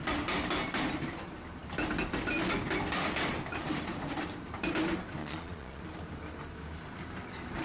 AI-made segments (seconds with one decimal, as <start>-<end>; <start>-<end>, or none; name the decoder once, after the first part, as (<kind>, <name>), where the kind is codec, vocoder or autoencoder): 5.2-5.8 (vocoder, Vocos)